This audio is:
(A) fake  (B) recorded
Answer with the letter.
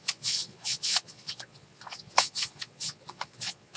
A